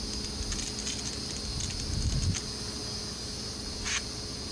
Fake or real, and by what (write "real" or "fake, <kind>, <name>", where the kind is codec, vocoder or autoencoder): real